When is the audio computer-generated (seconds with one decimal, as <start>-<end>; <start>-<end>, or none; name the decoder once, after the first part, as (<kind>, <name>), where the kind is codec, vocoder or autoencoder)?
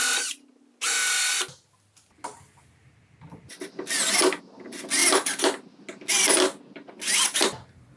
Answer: none